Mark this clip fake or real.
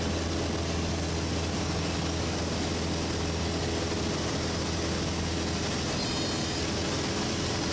real